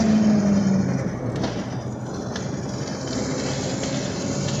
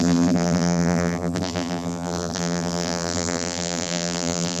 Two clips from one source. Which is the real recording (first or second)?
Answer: first